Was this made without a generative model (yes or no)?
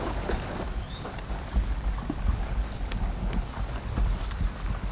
no